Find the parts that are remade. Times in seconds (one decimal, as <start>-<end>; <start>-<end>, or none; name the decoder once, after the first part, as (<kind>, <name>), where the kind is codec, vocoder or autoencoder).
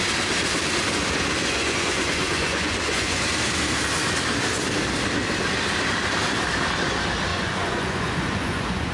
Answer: 1.4-3.2 (vocoder, Vocos); 7.3-8.9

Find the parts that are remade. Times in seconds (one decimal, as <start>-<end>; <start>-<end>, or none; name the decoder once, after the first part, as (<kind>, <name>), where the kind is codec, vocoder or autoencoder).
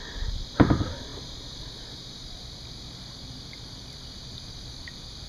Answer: 0.0-1.1 (vocoder, BigVGAN v2); 2.4-5.3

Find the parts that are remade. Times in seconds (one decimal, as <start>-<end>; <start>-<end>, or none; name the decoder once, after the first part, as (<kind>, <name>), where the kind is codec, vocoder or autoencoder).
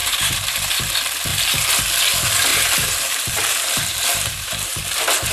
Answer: 0.0-0.9 (vocoder, BigVGAN v2); 1.3-1.8; 2.5-4.8